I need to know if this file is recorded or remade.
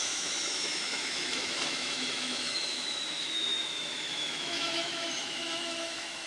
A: remade